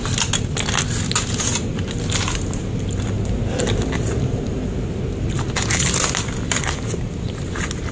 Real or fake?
real